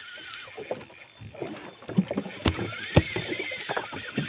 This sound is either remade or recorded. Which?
recorded